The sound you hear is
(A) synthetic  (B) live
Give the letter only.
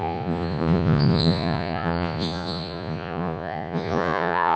A